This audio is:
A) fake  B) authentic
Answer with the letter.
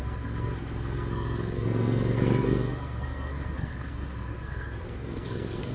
A